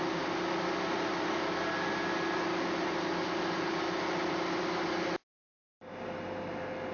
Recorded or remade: recorded